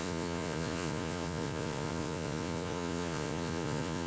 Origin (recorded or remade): remade